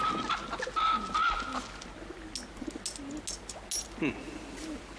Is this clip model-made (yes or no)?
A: no